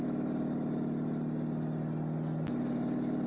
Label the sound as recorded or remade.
recorded